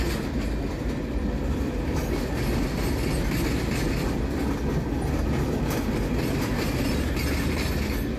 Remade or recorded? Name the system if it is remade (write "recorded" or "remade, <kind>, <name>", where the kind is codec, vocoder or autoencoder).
recorded